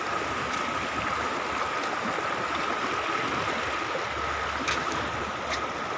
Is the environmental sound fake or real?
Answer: real